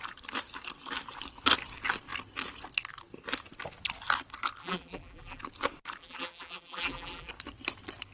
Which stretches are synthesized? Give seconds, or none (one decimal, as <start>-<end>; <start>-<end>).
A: 4.6-5.4; 6.0-7.3